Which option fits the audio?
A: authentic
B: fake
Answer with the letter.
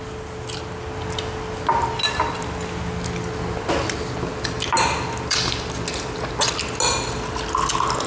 A